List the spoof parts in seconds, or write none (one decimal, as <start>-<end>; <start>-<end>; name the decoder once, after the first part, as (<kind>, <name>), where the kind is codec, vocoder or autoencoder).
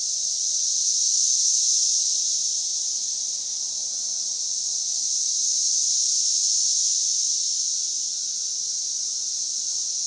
2.7-6.4 (vocoder, BigVGAN v2); 7.5-9.3